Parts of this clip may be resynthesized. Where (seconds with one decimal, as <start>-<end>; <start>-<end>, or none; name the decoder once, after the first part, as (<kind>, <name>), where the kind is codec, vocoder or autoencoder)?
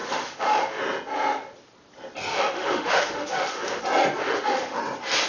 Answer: 0.0-0.8 (autoencoder, DAC-VAE); 2.3-3.8; 4.2-4.8